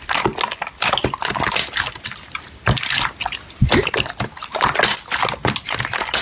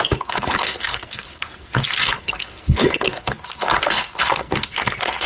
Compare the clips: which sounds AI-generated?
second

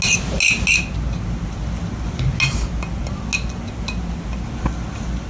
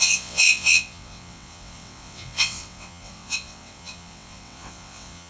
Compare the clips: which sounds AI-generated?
second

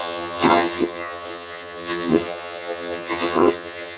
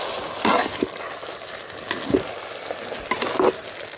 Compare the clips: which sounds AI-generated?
first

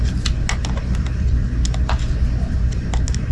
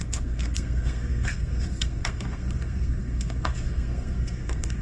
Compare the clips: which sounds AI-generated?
second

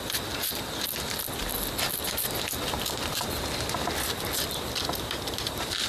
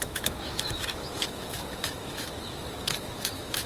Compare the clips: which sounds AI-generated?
second